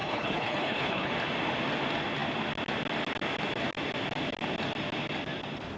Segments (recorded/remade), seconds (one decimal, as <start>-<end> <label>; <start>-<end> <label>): 0.0-1.1 remade; 1.1-5.8 recorded